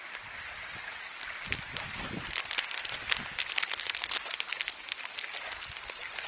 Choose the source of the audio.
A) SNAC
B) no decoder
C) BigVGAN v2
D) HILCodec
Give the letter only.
B